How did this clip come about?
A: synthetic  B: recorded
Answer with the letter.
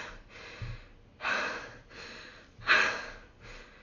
B